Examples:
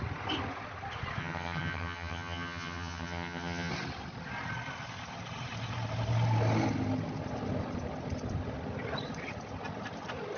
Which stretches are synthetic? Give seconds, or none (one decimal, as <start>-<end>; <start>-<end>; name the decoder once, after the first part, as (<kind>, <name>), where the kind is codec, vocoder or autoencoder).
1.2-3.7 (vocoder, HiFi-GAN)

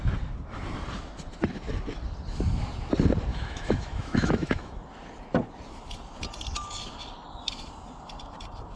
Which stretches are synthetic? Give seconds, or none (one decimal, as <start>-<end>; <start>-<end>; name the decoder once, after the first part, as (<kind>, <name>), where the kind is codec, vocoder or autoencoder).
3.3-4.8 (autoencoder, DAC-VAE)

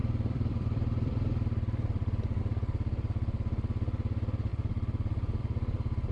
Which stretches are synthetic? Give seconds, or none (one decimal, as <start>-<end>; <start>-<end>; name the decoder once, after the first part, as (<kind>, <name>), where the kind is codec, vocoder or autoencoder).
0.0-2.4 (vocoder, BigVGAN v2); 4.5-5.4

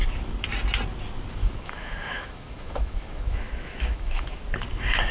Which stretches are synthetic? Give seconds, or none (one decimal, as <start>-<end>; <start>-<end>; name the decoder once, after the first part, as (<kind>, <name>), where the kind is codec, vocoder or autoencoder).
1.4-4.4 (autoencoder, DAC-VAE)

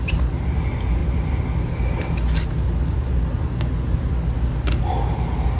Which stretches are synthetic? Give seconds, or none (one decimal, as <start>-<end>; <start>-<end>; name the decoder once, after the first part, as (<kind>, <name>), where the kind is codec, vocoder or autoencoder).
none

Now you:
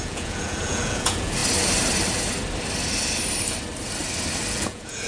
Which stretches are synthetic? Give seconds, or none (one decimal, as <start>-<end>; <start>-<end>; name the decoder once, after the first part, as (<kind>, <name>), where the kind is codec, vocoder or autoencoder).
0.0-1.4 (vocoder, Vocos); 4.5-5.1

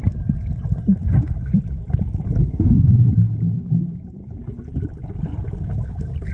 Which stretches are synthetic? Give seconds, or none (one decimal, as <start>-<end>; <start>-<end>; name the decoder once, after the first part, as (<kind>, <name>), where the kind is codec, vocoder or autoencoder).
2.4-3.1 (codec, SNAC)